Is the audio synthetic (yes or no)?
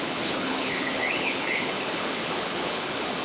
yes